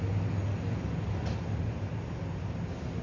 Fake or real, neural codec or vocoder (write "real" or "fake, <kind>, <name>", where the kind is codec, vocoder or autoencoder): real